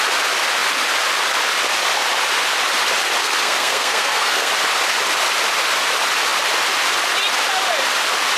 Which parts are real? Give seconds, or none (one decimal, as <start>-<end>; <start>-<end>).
0.0-3.2; 4.5-8.4

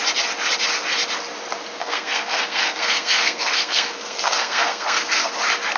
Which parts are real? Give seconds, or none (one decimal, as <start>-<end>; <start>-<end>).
0.0-1.8; 5.3-5.8

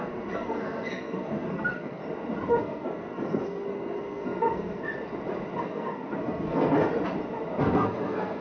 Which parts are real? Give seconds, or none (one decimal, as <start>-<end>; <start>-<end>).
2.0-2.6; 4.9-5.6; 6.8-7.6

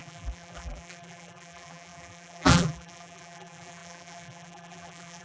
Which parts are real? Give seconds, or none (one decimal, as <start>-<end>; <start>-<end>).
none

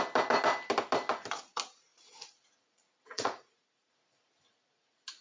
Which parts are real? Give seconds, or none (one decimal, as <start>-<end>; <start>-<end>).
0.0-1.9

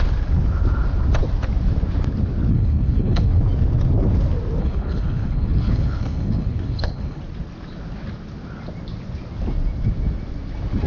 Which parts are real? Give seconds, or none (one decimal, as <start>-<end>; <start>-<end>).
0.0-2.5; 3.4-4.6; 7.2-10.9

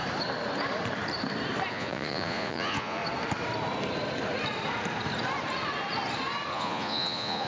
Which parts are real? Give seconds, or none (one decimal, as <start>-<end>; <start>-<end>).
0.0-1.7; 3.0-6.5